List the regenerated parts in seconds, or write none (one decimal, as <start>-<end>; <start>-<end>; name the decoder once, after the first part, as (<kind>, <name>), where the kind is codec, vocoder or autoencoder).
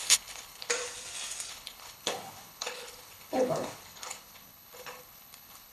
0.0-0.7 (codec, HILCodec); 1.5-5.7